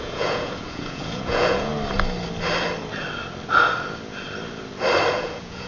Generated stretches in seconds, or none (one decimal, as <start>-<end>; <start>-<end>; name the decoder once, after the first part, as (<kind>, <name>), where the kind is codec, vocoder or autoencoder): 0.0-1.7 (vocoder, Vocos); 5.1-5.7

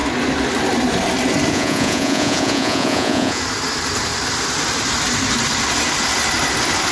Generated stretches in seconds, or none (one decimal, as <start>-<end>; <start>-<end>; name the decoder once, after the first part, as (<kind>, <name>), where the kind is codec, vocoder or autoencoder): 1.5-3.4 (vocoder, Vocos)

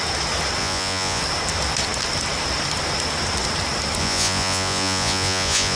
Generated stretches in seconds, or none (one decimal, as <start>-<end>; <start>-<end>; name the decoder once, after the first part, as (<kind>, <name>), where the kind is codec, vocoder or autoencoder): 0.6-1.2 (vocoder, Vocos); 4.0-5.8

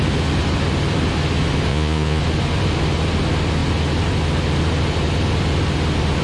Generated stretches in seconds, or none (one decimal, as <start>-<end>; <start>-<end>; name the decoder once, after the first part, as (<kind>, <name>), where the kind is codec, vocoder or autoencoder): 1.7-2.2 (vocoder, Vocos)

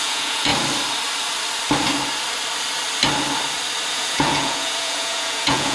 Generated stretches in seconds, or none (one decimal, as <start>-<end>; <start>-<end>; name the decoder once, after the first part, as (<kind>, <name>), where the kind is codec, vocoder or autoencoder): 0.0-0.5 (vocoder, Vocos); 3.9-5.7

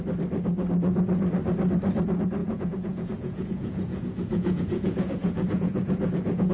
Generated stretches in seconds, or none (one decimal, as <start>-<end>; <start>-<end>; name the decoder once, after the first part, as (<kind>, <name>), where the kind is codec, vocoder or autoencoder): 2.4-6.5 (vocoder, Vocos)